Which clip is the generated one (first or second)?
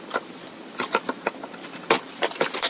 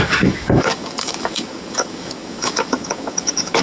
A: second